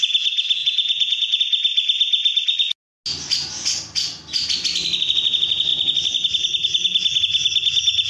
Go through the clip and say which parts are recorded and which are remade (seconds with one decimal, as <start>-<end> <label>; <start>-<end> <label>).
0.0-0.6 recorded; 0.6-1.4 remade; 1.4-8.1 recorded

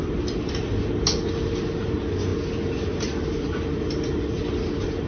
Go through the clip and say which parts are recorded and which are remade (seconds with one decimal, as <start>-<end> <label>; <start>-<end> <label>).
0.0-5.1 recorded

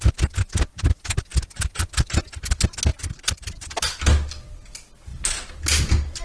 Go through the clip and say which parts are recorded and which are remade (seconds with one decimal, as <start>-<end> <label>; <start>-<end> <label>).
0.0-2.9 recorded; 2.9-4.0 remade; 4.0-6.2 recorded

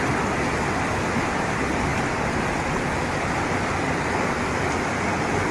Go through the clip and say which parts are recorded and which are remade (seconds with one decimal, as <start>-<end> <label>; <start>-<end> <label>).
0.0-5.5 recorded